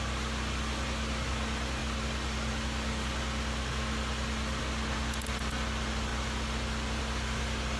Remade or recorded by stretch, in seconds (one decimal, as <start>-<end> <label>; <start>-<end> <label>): 0.0-7.8 recorded